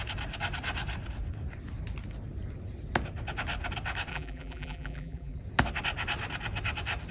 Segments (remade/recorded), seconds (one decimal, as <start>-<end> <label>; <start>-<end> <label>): 0.0-4.1 recorded; 4.1-5.4 remade; 5.4-7.1 recorded